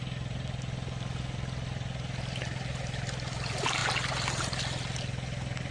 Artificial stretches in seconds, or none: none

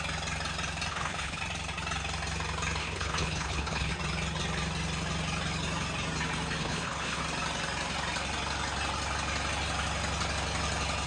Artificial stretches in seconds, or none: 0.9-1.4; 2.8-3.9; 6.6-7.2

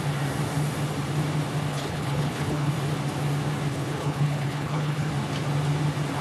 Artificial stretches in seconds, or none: 1.7-2.7; 3.7-5.1